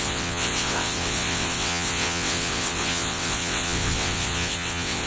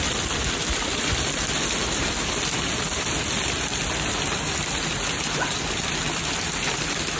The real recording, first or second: second